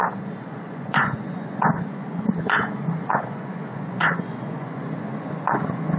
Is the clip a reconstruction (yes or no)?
yes